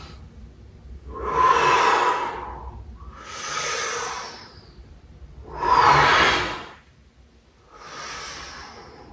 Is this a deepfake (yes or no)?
no